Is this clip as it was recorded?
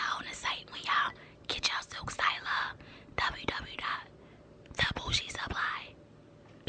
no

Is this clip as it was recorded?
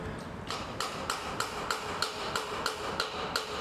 yes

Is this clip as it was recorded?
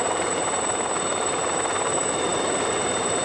no